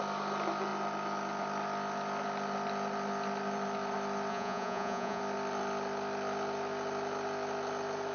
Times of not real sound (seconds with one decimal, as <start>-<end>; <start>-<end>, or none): 4.3-5.2

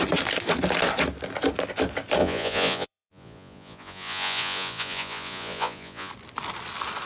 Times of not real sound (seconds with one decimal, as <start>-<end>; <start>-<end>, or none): 2.2-6.1

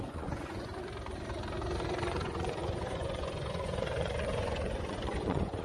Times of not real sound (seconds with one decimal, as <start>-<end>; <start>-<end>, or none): 0.0-0.7; 2.0-5.6